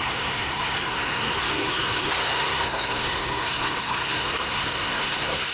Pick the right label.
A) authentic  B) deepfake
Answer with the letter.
B